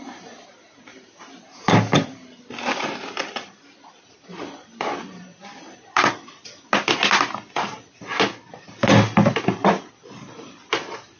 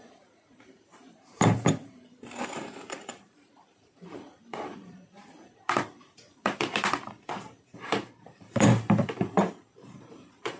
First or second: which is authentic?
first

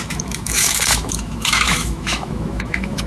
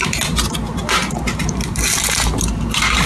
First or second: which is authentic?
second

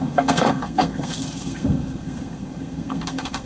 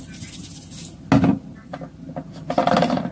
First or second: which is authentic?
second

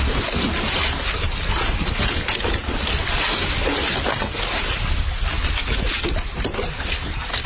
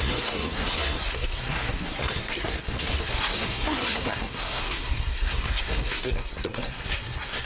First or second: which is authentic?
first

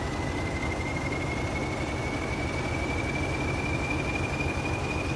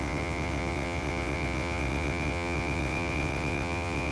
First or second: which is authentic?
first